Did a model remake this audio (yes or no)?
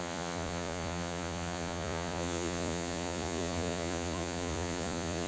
yes